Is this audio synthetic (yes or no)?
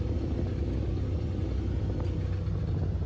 no